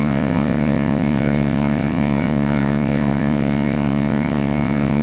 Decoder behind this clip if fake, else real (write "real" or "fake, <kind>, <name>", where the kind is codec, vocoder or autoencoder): fake, vocoder, WaveNeXt